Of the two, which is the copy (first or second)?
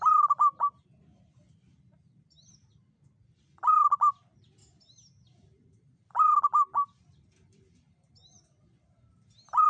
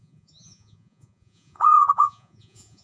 second